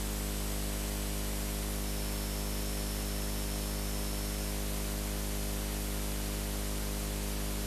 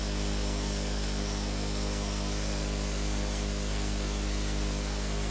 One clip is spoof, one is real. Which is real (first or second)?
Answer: first